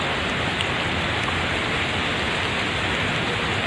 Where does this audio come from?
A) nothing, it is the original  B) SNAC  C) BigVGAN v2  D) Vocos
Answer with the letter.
A